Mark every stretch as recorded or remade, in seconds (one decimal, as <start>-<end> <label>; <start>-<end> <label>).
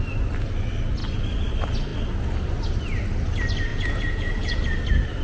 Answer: 0.0-3.7 recorded; 3.7-4.6 remade; 4.6-5.2 recorded